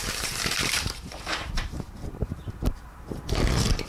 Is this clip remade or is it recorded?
remade